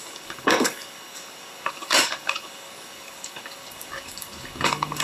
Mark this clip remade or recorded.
remade